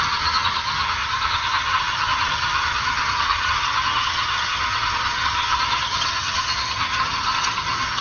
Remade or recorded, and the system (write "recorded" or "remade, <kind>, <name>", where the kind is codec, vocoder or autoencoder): remade, vocoder, HiFi-GAN